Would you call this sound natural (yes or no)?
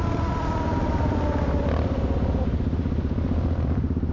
yes